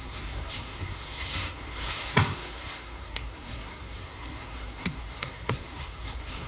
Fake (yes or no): yes